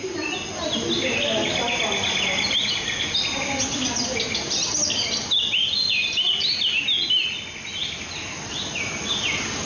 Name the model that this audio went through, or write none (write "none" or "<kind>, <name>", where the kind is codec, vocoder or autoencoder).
none